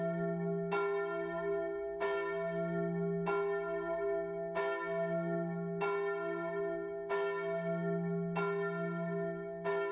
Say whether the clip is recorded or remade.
recorded